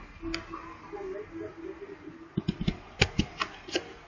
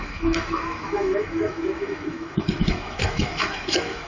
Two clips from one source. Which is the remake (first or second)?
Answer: second